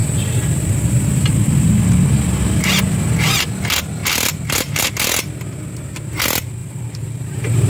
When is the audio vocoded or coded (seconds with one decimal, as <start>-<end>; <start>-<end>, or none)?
0.0-1.7; 6.6-7.7